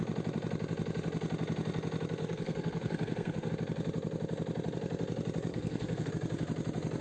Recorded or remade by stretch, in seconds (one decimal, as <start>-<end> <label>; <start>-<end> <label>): 0.0-2.2 recorded; 2.2-3.5 remade; 3.5-5.5 recorded; 5.5-6.1 remade; 6.1-7.0 recorded